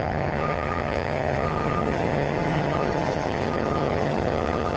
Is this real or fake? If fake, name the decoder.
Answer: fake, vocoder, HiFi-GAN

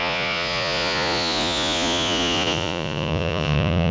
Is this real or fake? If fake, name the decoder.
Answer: fake, vocoder, Vocos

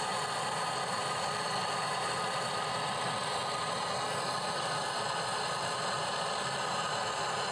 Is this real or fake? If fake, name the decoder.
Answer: real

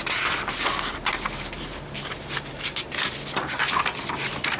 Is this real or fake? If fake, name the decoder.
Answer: real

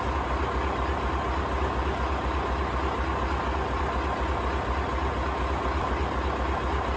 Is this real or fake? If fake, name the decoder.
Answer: real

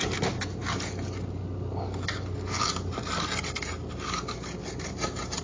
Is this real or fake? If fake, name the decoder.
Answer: real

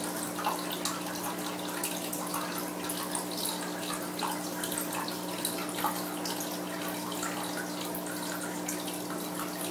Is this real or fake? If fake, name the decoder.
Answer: real